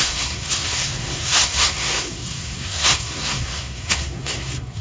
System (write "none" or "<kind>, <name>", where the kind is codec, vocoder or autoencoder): codec, SNAC